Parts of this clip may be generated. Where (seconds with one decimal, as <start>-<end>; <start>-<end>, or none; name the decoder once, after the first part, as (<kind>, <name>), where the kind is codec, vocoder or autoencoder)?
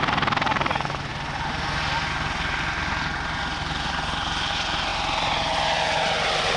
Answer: none